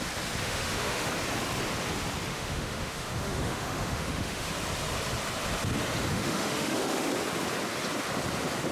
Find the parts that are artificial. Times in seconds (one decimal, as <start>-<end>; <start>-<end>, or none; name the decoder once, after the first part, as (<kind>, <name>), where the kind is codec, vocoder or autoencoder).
0.4-1.1 (autoencoder, DAC-VAE); 2.3-4.5; 6.1-7.1